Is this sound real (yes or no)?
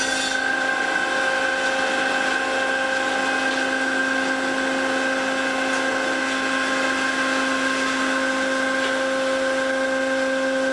yes